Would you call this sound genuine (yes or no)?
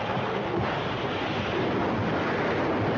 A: yes